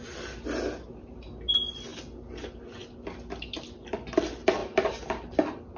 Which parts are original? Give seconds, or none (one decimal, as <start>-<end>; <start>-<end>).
0.0-5.8